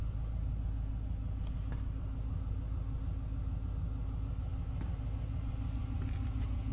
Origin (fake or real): real